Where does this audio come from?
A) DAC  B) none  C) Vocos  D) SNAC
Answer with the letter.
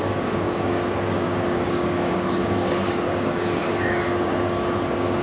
A